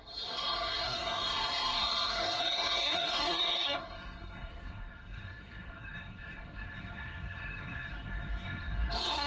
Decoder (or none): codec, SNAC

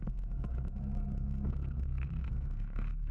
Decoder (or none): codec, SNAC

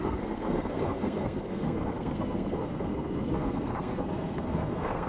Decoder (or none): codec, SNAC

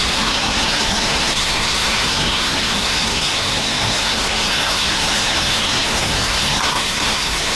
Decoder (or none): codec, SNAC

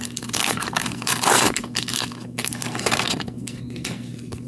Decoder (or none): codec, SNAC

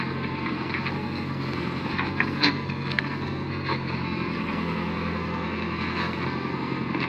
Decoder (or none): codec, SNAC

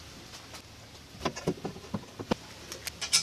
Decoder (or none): none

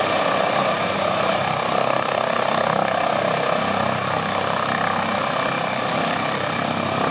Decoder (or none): none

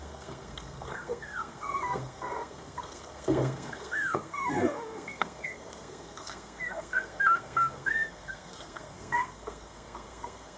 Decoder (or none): codec, SNAC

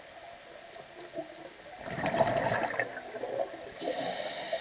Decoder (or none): none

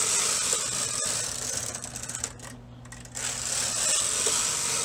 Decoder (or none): none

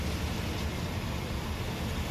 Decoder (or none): none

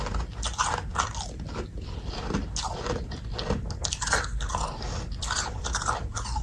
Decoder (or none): none